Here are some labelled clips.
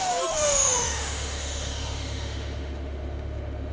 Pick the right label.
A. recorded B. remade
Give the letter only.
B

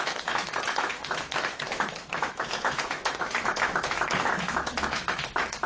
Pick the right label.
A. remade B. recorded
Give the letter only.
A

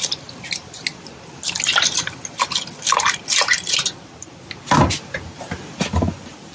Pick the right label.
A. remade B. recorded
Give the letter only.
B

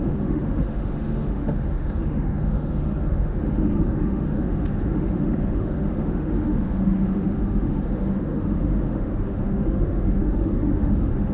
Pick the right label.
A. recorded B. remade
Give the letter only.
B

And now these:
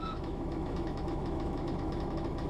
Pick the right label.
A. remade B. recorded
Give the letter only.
A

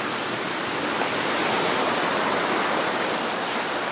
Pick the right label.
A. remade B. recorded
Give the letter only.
B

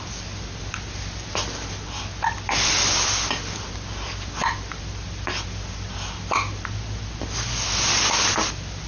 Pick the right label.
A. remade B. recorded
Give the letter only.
B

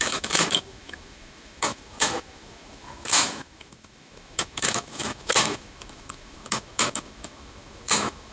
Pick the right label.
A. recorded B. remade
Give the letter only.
B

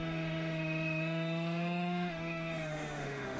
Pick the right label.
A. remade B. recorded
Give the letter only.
A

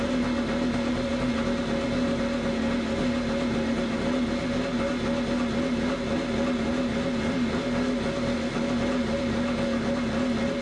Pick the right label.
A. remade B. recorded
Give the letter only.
B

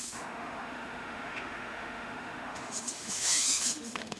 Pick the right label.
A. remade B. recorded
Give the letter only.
A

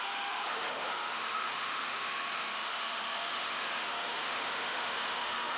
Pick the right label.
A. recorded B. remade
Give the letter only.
B